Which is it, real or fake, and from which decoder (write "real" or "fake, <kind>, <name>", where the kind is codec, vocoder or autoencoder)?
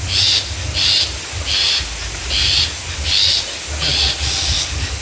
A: real